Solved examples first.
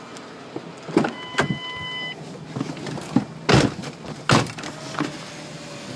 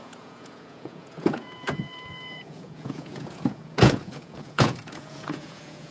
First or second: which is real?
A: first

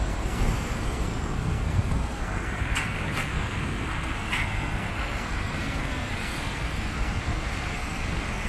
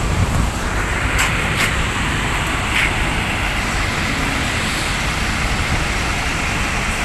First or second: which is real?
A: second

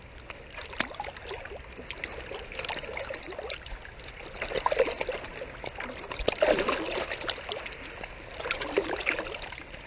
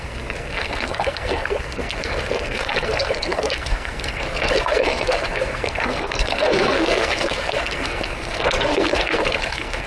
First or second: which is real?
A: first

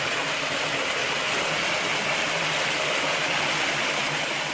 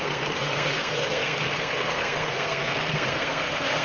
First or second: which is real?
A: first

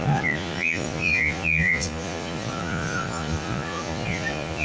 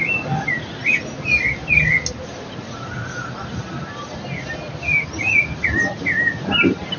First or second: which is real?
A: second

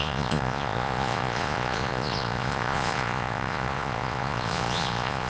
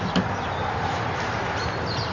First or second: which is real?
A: second